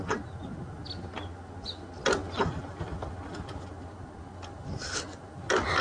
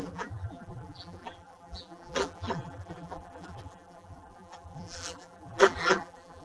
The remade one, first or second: second